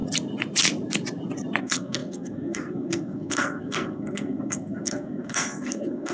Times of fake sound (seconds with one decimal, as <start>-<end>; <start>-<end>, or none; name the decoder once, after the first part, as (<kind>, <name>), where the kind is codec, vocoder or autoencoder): 1.6-6.1 (codec, SNAC)